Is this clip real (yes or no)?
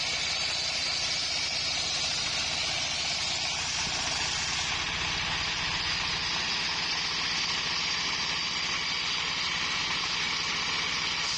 yes